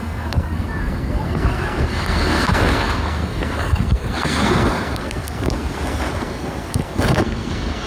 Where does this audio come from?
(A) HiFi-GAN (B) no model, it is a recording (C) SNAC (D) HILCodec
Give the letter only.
C